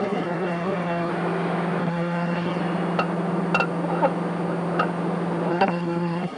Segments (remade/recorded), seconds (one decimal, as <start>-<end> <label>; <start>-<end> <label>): 0.0-1.1 remade; 1.1-1.8 recorded; 1.8-2.6 remade; 2.6-5.5 recorded; 5.5-6.4 remade